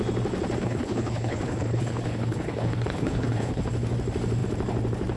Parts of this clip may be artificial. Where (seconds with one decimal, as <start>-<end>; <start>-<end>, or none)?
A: 0.6-3.7